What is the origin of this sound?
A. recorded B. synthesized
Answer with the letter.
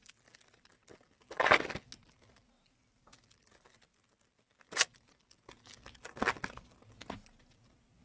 A